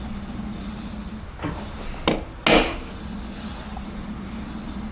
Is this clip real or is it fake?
real